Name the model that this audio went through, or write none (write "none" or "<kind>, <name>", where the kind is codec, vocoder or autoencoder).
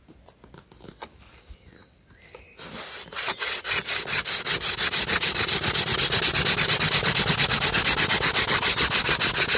none